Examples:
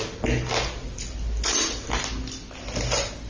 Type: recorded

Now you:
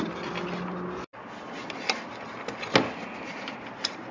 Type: recorded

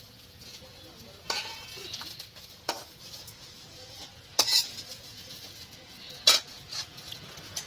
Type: remade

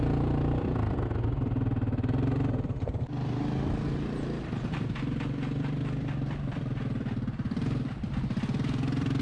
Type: remade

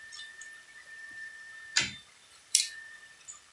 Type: remade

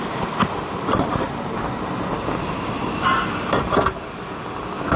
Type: recorded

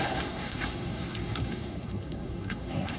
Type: remade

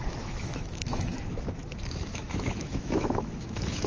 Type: remade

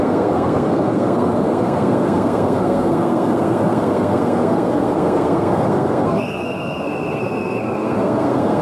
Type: remade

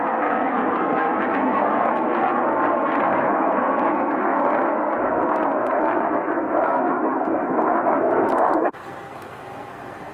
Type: remade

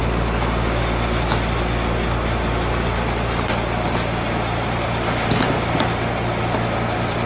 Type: recorded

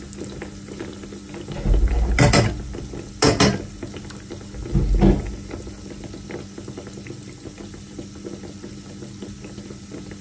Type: recorded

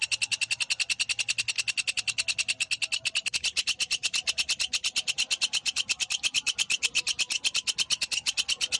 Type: recorded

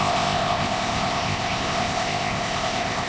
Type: remade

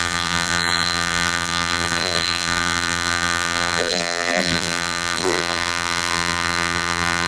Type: remade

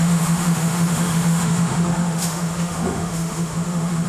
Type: remade